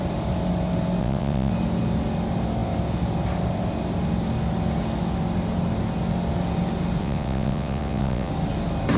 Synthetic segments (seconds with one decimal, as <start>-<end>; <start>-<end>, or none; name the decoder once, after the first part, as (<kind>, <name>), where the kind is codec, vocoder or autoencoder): 1.0-1.5 (vocoder, WaveNeXt); 7.0-8.3